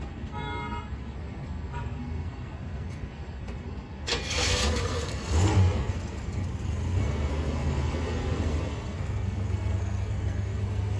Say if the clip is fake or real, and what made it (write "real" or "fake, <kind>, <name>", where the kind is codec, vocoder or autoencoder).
fake, codec, SNAC